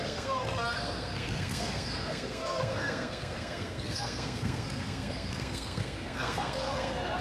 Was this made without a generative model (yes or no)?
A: no